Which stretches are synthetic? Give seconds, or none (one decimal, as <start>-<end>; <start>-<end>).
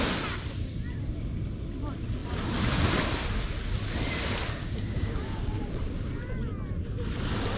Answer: 4.6-5.6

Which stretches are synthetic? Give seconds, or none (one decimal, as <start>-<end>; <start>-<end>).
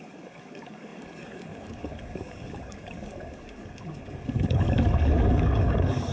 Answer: 0.0-6.1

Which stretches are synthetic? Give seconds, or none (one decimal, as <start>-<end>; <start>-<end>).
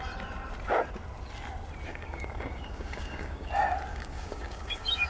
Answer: 1.9-3.5; 3.9-5.1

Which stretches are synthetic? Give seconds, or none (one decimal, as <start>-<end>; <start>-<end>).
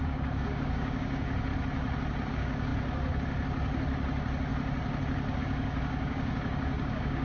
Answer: 0.0-1.5; 2.3-2.7; 5.4-7.2